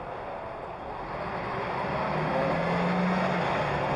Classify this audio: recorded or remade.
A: recorded